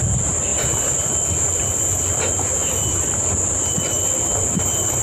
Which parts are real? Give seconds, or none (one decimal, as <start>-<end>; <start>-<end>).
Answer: 0.0-5.0